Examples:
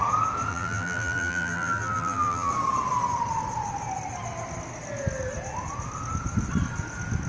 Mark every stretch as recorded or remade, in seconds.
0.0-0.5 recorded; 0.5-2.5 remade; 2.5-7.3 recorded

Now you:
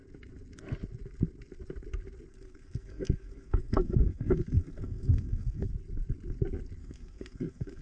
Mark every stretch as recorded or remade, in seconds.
0.0-2.3 recorded; 2.3-5.7 remade; 5.7-6.8 recorded; 6.8-7.8 remade

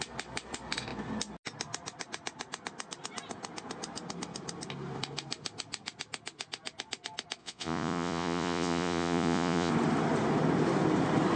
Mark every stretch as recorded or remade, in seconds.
0.0-7.4 recorded; 7.4-9.7 remade; 9.7-11.4 recorded

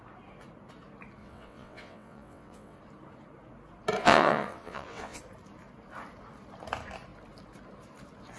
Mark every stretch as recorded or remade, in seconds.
0.0-1.2 recorded; 1.2-2.8 remade; 2.8-4.0 recorded; 4.0-5.2 remade; 5.2-8.4 recorded

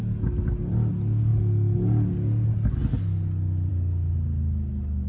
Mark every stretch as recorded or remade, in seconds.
0.0-5.1 recorded